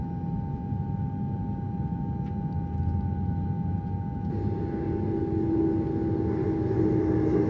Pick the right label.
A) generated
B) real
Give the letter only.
B